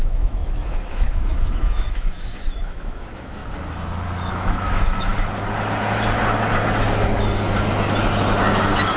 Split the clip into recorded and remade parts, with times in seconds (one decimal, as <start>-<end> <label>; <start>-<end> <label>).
0.0-3.4 remade; 3.4-4.3 recorded; 4.3-5.1 remade; 5.1-9.0 recorded